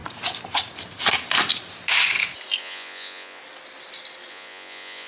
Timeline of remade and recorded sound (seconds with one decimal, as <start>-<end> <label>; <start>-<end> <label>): 0.0-2.6 recorded; 2.6-3.4 remade; 3.4-4.3 recorded; 4.3-5.1 remade